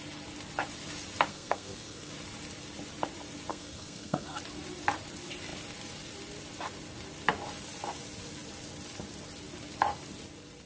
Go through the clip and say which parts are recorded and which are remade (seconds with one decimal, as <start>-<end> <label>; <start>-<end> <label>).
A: 0.0-1.3 recorded; 1.3-2.1 remade; 2.1-3.5 recorded; 3.5-4.4 remade; 4.4-10.7 recorded